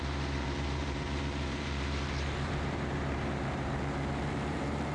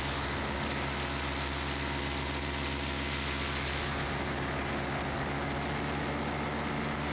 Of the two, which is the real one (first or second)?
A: second